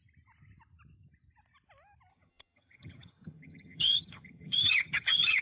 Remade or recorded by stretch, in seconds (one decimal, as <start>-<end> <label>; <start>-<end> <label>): 0.0-2.1 recorded; 2.1-5.4 remade